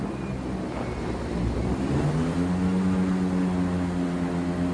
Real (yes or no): yes